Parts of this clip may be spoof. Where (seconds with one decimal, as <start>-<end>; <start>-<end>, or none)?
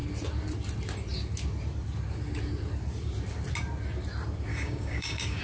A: 4.5-5.4